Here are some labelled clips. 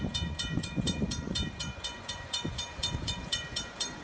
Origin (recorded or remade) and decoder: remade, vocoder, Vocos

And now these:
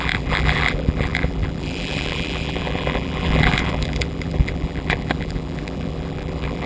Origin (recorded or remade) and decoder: remade, vocoder, BigVGAN v2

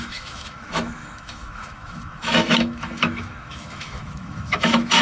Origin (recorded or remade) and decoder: remade, autoencoder, DAC-VAE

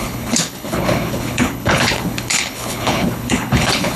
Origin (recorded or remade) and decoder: remade, codec, HILCodec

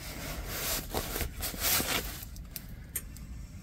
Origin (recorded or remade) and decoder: recorded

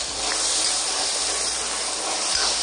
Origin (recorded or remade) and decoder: recorded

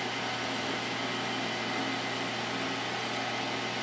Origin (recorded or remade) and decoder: recorded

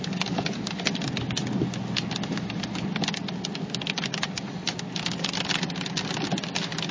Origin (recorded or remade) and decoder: recorded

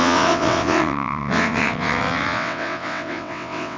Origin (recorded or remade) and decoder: remade, vocoder, WaveNeXt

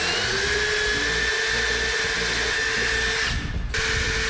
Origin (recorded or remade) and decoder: recorded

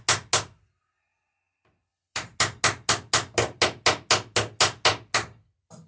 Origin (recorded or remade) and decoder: recorded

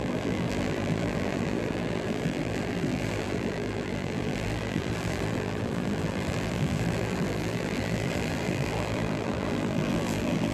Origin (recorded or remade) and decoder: remade, vocoder, BigVGAN v2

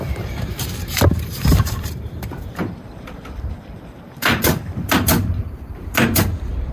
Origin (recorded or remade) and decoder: remade, vocoder, BigVGAN v2